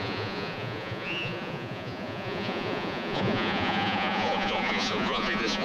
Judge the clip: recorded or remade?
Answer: remade